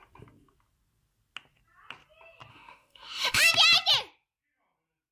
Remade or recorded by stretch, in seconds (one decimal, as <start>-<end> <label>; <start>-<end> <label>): 0.0-2.5 recorded; 2.5-3.5 remade; 3.5-5.1 recorded